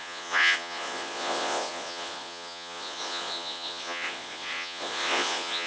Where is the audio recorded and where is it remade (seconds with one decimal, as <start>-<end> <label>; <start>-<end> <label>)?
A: 0.0-5.7 remade